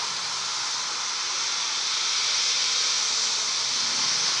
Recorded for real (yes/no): yes